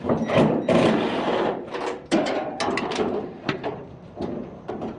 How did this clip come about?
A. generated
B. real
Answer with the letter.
A